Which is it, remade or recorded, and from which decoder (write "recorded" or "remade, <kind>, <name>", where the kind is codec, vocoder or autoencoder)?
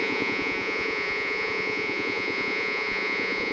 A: remade, vocoder, Vocos